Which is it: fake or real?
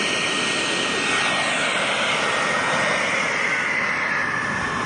real